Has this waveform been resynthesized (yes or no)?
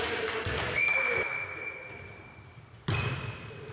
no